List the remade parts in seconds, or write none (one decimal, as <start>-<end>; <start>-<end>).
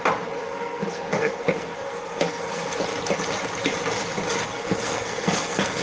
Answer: 0.4-2.8; 4.5-5.8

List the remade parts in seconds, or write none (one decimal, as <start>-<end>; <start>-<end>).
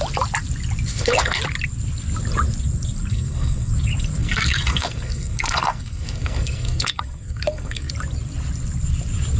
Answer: 0.9-1.4; 3.1-3.7; 4.2-7.9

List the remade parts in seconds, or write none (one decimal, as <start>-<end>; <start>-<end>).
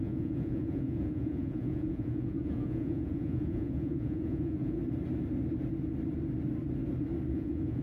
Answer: 0.0-4.8; 7.3-7.8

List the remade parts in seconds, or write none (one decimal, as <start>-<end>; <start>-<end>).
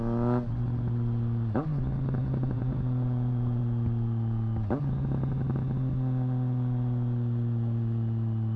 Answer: 2.2-3.6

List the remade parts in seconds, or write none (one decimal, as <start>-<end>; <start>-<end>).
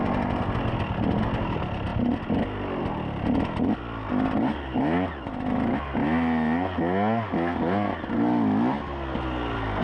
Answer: none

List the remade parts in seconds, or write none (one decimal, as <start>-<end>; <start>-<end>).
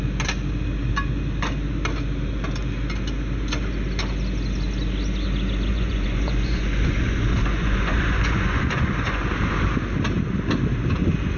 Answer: 5.7-9.3